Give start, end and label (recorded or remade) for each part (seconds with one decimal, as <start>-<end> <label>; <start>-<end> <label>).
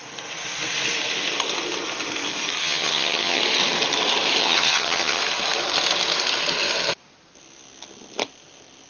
0.0-2.6 recorded; 2.6-3.4 remade; 3.4-4.4 recorded; 4.4-5.2 remade; 5.2-8.9 recorded